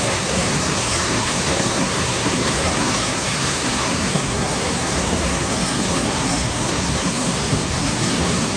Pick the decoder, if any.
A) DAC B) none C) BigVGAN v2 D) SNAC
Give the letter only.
D